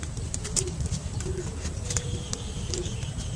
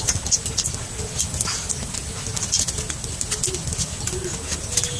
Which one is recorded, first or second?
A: second